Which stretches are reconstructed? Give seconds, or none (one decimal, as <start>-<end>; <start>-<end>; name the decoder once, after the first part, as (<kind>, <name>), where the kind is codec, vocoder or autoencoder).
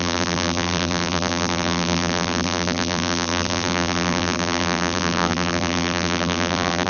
0.0-6.9 (vocoder, BigVGAN v2)